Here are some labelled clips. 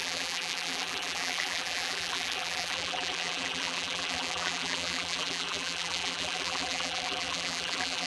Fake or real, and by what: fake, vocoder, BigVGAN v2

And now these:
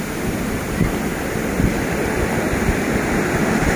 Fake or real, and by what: real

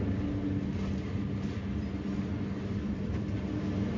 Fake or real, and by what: real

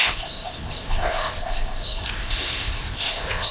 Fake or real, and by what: fake, codec, ZipCodec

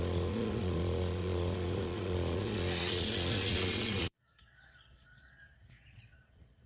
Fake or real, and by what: fake, vocoder, Vocos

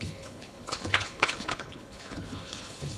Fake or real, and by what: fake, codec, HILCodec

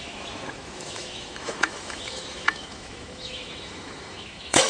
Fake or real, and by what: fake, autoencoder, DAC-VAE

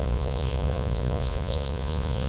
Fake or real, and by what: fake, vocoder, Vocos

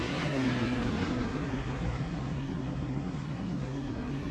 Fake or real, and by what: fake, codec, SNAC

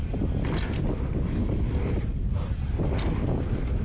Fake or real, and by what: real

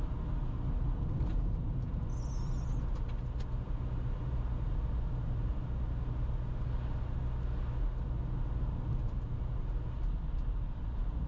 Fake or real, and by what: real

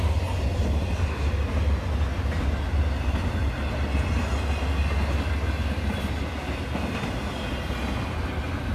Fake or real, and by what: real